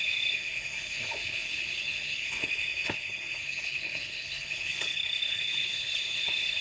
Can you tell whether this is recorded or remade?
remade